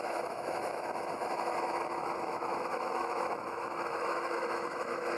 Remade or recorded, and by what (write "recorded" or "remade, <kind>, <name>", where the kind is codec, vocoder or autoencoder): remade, autoencoder, DAC-VAE